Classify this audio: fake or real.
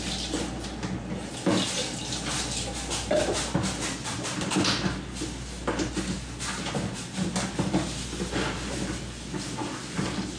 real